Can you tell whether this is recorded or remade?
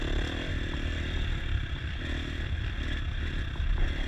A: recorded